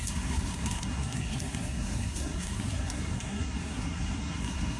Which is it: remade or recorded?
remade